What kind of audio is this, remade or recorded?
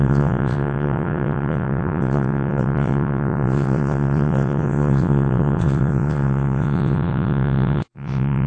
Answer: remade